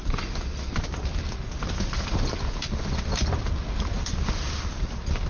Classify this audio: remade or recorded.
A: recorded